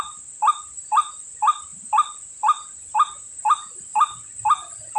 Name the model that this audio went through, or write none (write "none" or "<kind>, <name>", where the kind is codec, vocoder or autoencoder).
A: none